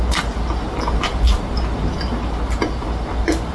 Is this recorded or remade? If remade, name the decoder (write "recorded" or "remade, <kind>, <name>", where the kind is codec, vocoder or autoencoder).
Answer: recorded